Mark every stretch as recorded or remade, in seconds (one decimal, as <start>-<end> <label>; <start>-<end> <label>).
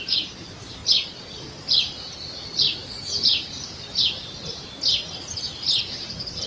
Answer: 0.0-0.8 remade; 0.8-1.4 recorded; 1.4-6.5 remade